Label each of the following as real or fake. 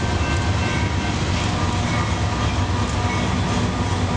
real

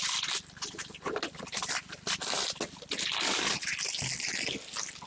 real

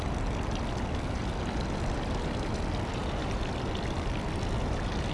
real